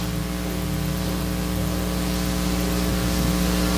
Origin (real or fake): real